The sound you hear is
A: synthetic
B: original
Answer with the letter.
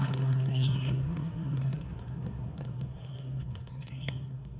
A